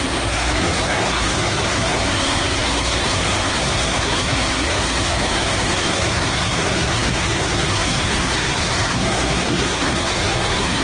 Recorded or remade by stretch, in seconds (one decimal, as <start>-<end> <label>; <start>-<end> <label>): 0.0-10.8 remade